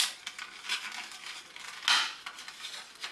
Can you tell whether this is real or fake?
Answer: real